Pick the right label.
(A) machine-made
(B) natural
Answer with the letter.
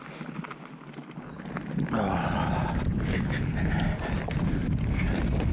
B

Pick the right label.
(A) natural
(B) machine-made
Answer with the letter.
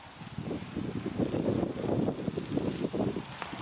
A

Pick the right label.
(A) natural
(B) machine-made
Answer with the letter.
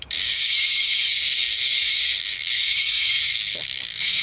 B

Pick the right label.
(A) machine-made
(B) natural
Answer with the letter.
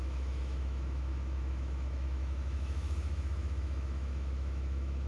A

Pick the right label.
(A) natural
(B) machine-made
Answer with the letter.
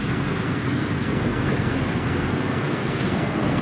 B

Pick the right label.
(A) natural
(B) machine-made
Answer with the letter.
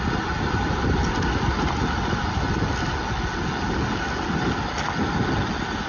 A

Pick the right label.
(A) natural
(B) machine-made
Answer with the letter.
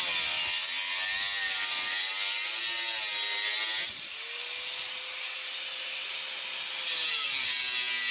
A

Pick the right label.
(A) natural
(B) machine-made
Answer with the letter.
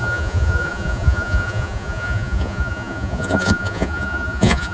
B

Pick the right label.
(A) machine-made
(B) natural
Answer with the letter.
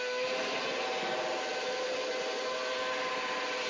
B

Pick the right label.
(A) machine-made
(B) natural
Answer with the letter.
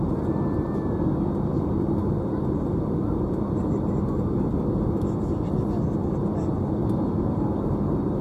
B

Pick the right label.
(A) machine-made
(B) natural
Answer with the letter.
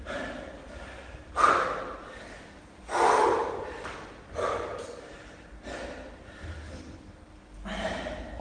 B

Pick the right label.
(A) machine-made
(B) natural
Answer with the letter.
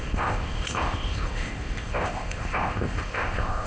A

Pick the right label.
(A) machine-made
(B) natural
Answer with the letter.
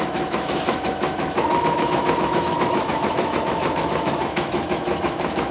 A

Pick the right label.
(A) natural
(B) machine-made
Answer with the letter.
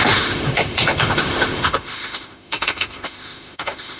B